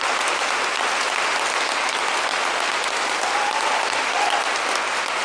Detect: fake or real real